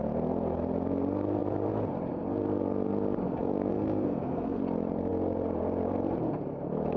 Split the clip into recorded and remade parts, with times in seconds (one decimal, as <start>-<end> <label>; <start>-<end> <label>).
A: 0.0-3.7 recorded; 3.7-4.6 remade; 4.6-7.0 recorded